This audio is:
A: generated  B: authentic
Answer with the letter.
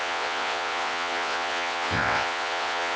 A